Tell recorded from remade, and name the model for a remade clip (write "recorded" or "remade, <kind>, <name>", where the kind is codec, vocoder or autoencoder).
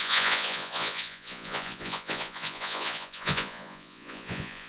remade, vocoder, Vocos